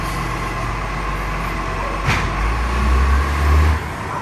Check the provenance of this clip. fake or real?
real